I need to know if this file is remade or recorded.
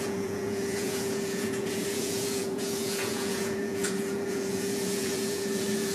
remade